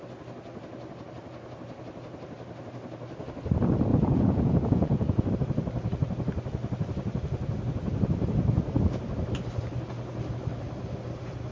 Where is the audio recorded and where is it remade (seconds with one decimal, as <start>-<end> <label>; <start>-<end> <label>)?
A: 0.0-3.9 recorded; 3.9-5.3 remade; 5.3-11.5 recorded